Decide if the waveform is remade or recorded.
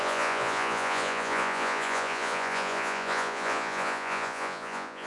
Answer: remade